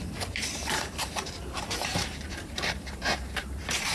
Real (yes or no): no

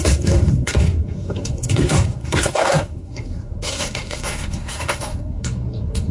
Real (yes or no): no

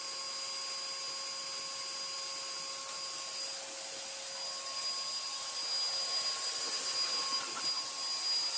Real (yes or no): yes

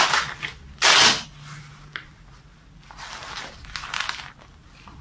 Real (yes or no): yes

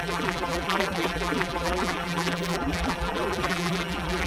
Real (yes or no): no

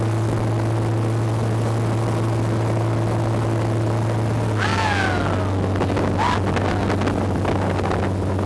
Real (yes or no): yes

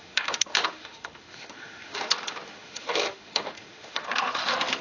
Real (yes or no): no